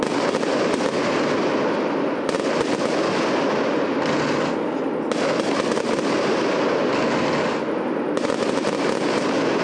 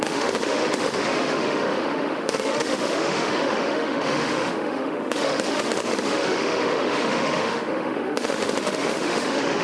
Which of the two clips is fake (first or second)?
second